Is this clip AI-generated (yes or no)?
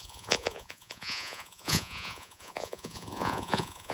yes